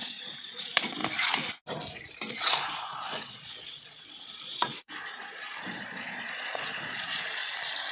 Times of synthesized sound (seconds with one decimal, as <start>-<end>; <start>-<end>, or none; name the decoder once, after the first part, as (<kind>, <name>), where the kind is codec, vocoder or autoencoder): 0.0-1.0 (vocoder, Vocos); 2.3-7.4

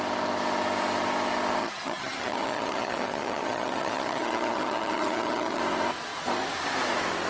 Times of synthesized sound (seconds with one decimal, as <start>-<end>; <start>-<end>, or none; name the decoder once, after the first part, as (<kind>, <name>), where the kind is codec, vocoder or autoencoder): 1.6-5.6 (vocoder, HiFi-GAN)

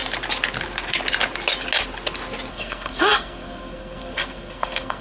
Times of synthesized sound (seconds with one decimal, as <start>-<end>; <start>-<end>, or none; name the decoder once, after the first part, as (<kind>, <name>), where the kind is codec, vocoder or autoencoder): 2.5-5.0 (codec, SNAC)

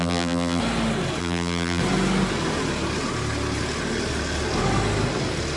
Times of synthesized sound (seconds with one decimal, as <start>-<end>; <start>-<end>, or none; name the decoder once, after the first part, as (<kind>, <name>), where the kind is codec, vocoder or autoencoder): 0.0-0.6 (vocoder, BigVGAN v2); 1.2-1.8